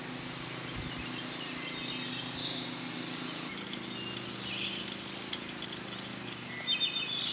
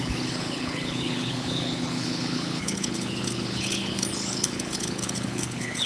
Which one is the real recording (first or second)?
first